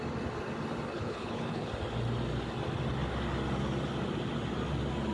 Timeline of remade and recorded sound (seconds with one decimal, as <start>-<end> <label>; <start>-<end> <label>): 0.0-0.9 recorded; 0.9-1.7 remade; 1.7-5.1 recorded